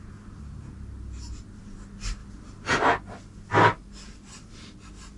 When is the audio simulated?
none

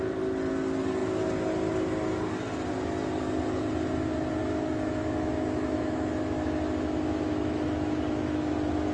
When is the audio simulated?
4.4-8.5 (autoencoder, DAC-VAE)

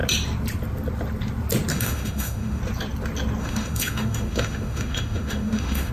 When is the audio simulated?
1.7-2.6 (autoencoder, DAC-VAE); 3.4-5.9

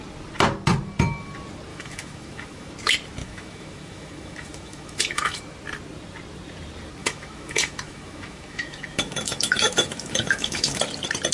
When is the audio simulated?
1.7-2.7 (autoencoder, DAC-VAE); 3.2-5.4; 7.0-10.8